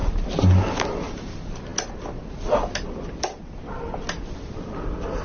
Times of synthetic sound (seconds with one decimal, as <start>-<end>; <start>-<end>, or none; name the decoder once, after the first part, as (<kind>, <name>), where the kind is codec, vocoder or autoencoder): none